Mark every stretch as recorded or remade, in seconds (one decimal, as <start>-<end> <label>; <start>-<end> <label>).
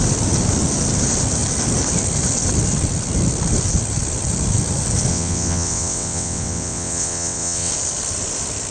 0.0-5.1 recorded; 5.1-7.7 remade; 7.7-8.7 recorded